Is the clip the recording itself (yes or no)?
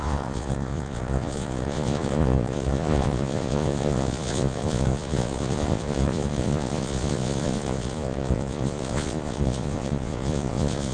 no